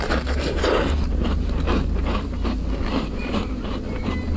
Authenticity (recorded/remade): recorded